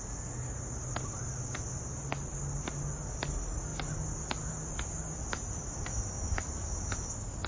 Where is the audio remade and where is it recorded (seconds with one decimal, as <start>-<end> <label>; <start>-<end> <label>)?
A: 0.0-7.5 recorded